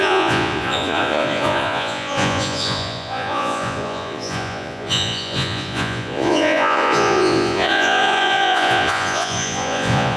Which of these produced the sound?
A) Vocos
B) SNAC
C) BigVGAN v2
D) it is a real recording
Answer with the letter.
A